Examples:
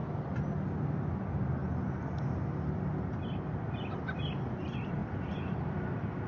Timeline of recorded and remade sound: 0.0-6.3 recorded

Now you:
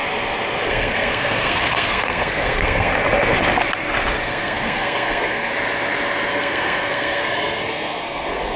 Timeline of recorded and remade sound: 0.0-0.7 recorded; 0.7-2.9 remade; 2.9-4.2 recorded; 4.2-5.5 remade; 5.5-6.3 recorded; 6.3-8.6 remade

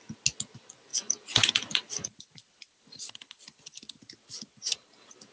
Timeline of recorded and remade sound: 0.0-0.9 recorded; 0.9-4.1 remade; 4.1-5.3 recorded

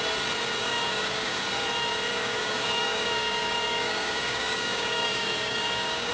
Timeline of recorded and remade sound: 0.0-0.6 recorded; 0.6-1.4 remade; 1.4-2.1 recorded; 2.1-6.1 remade

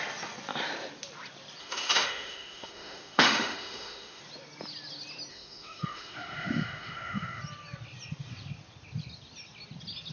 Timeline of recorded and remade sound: 0.0-1.6 recorded; 1.6-4.2 remade; 4.2-5.3 recorded; 5.3-7.4 remade; 7.4-10.1 recorded

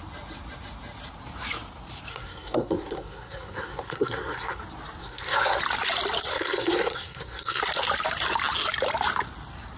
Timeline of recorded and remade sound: 0.0-2.1 recorded; 2.1-4.6 remade; 4.6-5.0 recorded; 5.0-5.6 remade; 5.6-6.3 recorded; 6.3-7.6 remade; 7.6-9.8 recorded

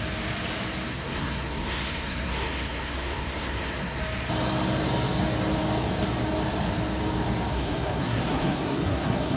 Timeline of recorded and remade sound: 0.0-0.9 recorded; 0.9-4.0 remade; 4.0-7.5 recorded; 7.5-9.4 remade

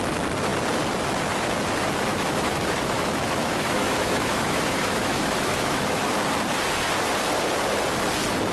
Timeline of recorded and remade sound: 0.0-2.1 recorded; 2.1-6.1 remade; 6.1-8.5 recorded